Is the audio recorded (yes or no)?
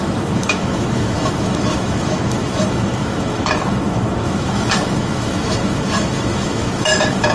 no